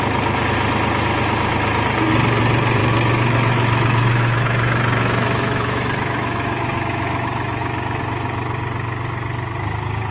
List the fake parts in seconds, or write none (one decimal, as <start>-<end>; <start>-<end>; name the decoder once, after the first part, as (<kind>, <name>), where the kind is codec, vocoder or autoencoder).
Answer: 2.8-8.0 (autoencoder, DAC-VAE)